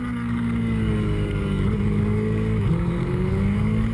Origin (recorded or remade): remade